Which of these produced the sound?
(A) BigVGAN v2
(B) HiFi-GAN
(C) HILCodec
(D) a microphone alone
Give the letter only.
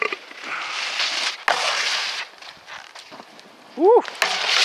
D